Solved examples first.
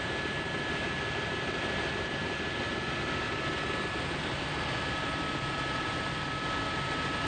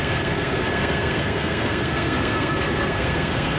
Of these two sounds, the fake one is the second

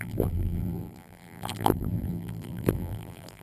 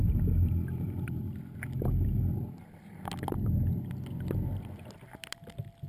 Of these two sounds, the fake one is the first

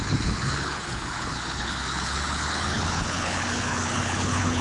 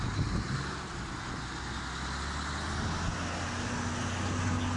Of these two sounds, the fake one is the first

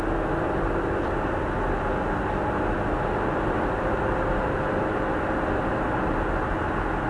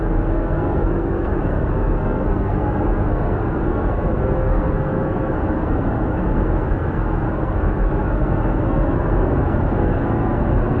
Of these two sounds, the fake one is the second